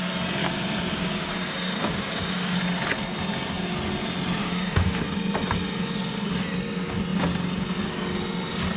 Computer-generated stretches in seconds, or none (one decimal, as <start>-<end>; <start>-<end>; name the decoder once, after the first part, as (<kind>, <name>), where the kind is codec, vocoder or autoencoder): 0.4-2.6 (codec, DAC); 4.4-5.0